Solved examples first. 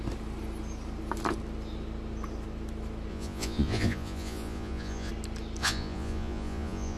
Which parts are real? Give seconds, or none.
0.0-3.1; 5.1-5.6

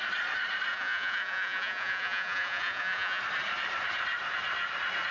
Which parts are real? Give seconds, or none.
0.0-0.7; 3.2-5.1

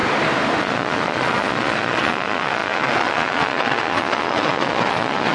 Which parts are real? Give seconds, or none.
0.0-0.6

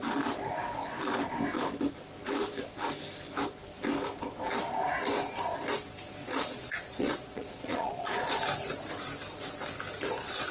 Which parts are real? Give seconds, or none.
0.0-6.2; 8.4-10.5

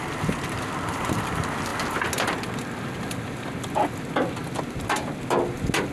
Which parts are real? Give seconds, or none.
0.0-5.9

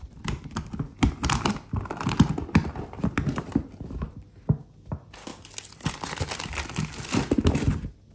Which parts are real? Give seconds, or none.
0.0-8.1

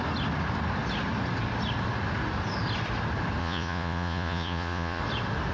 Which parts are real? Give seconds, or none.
0.0-3.4; 5.0-5.5